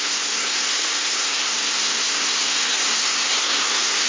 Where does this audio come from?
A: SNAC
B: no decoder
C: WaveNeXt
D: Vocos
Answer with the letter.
A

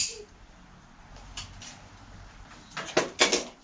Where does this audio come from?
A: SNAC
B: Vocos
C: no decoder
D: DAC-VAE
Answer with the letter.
C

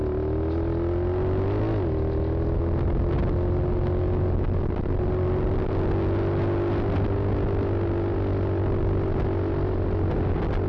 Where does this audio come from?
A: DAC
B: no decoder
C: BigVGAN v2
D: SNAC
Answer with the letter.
B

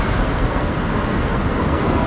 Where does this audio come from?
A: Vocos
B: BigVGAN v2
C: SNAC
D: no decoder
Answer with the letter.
C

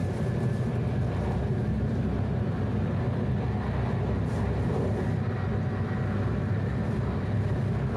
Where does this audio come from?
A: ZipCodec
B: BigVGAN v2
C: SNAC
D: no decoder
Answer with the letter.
D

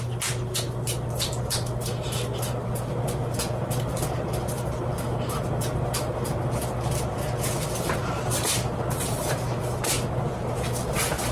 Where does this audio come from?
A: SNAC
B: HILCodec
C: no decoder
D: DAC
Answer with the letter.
C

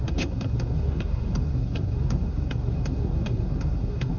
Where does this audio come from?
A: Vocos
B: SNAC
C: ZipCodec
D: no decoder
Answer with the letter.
B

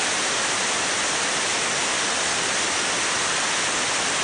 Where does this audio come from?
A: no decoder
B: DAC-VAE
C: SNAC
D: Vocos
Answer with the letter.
A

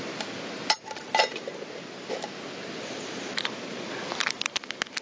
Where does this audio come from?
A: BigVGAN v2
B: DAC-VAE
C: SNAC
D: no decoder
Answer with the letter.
D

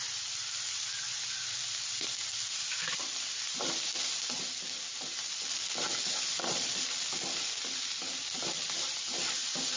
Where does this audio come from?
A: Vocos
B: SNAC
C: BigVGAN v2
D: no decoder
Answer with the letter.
D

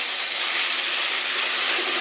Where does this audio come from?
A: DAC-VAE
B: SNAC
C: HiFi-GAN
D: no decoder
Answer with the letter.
D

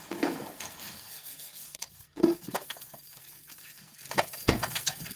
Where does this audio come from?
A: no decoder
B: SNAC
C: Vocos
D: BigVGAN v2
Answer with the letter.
B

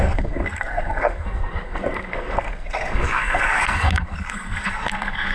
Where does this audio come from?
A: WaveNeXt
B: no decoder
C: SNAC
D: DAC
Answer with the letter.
C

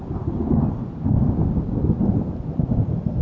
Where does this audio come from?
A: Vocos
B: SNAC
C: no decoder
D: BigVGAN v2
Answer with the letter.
C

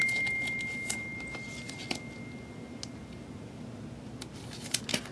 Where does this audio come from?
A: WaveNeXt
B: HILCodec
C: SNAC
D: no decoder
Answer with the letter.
D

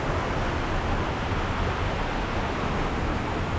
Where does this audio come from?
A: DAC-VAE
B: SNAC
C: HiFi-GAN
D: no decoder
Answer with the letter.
D